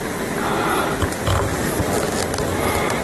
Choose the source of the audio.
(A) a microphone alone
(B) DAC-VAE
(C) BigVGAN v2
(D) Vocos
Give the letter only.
A